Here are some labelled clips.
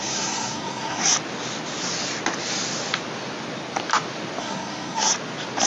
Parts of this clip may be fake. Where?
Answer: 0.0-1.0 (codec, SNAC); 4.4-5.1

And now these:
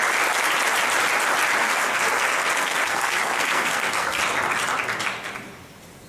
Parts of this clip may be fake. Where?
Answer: 1.6-4.2 (codec, SNAC)

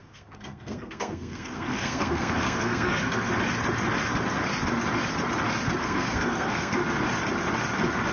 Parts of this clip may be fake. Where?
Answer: 0.0-3.3 (codec, SNAC); 5.7-6.8

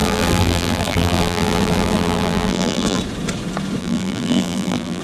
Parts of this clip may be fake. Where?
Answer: 0.0-3.0 (vocoder, BigVGAN v2); 3.8-5.0

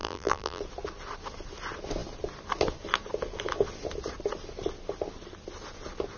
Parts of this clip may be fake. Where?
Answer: 0.0-0.6 (vocoder, BigVGAN v2)

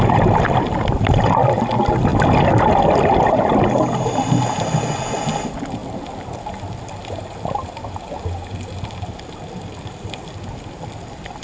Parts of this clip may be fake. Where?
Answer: none

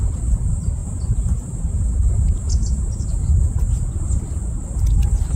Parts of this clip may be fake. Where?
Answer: none